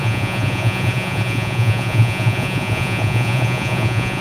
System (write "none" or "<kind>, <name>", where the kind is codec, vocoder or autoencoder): vocoder, Vocos